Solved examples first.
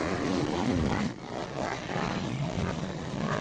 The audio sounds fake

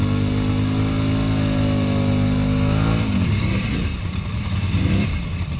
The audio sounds real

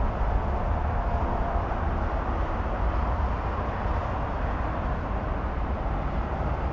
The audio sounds real